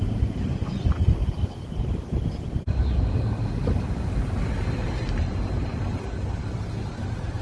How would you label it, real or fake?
real